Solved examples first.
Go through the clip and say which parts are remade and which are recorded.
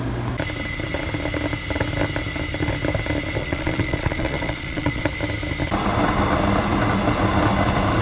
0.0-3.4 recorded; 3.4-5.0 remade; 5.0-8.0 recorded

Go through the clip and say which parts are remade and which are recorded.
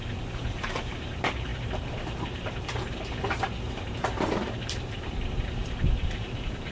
0.0-6.7 remade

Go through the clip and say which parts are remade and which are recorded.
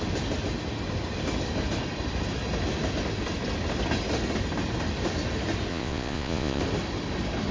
0.0-5.7 recorded; 5.7-6.6 remade; 6.6-7.5 recorded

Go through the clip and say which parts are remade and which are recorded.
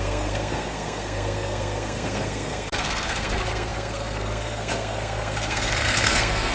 0.0-6.5 remade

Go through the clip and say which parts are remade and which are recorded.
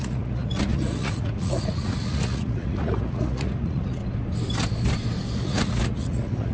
0.0-4.0 remade; 4.0-5.4 recorded; 5.4-6.5 remade